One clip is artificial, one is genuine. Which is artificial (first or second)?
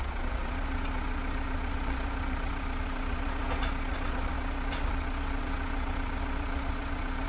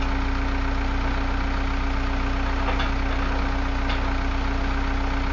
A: first